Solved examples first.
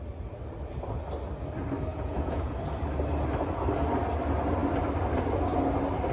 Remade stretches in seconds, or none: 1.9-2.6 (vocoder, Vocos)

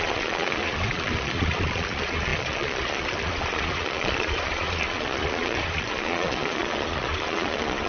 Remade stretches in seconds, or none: 0.0-7.9 (vocoder, Vocos)

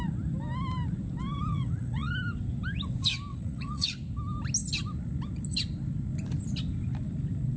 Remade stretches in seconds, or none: 1.5-2.1 (vocoder, Vocos); 3.3-3.9